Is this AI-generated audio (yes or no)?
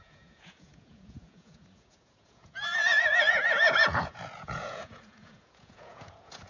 yes